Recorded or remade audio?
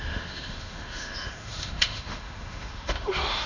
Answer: remade